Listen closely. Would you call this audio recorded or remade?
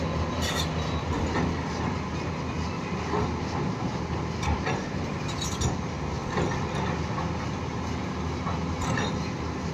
recorded